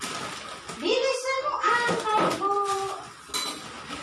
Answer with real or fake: real